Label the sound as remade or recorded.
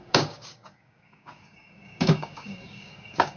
remade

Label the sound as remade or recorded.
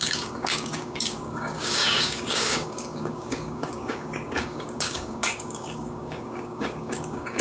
remade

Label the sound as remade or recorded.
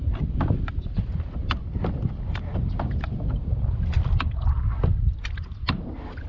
recorded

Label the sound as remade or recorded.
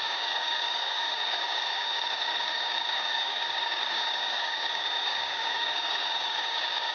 remade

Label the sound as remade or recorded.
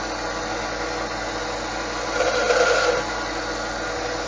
recorded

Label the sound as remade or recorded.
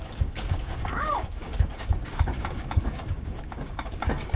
remade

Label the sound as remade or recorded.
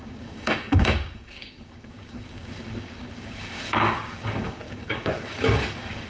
remade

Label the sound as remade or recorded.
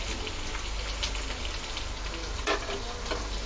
recorded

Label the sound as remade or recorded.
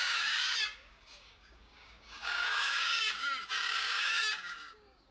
remade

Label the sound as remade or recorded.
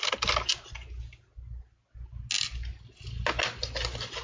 recorded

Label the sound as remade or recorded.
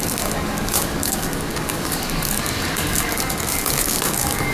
remade